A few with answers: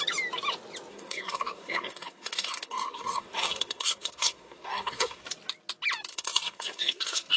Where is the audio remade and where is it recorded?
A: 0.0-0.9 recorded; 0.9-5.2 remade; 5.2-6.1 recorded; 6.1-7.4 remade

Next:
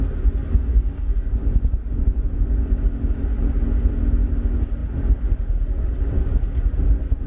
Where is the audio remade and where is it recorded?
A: 0.0-0.7 recorded; 0.7-1.3 remade; 1.3-7.3 recorded

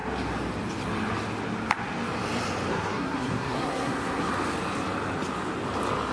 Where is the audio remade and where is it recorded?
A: 0.0-2.7 recorded; 2.7-4.3 remade; 4.3-6.1 recorded

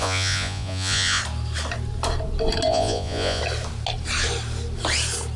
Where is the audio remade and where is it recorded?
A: 0.0-1.2 remade; 1.2-2.7 recorded; 2.7-3.4 remade; 3.4-5.4 recorded

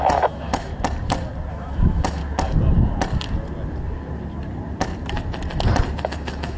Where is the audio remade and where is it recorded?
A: 0.0-0.7 remade; 0.7-1.5 recorded; 1.5-2.2 remade; 2.2-6.0 recorded; 6.0-6.6 remade

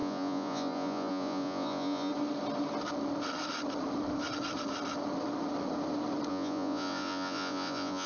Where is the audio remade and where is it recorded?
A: 0.0-2.1 remade; 2.1-6.3 recorded; 6.3-8.1 remade

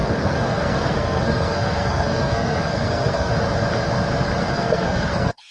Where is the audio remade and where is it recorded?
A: 0.0-3.3 remade; 3.3-4.4 recorded; 4.4-5.5 remade